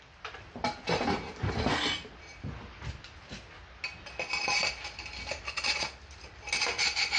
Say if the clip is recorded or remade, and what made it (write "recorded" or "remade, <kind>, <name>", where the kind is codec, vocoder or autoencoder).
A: recorded